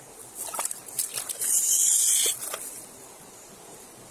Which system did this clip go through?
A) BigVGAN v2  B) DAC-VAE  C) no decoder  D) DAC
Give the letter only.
C